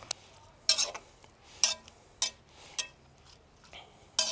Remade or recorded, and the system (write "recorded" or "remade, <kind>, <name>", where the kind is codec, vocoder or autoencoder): recorded